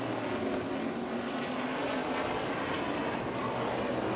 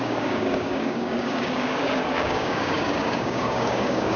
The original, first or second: first